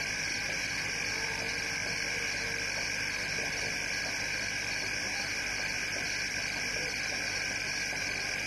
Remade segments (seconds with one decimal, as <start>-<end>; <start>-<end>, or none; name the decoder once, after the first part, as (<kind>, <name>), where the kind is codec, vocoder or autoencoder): none